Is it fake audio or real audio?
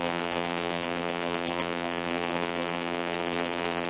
fake